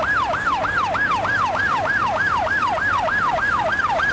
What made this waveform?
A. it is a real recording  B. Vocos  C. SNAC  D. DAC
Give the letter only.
A